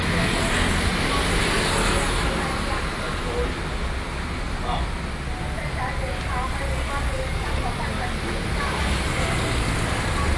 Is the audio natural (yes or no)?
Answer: yes